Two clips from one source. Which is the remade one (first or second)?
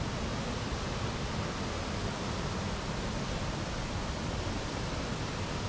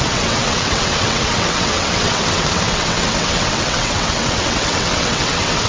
second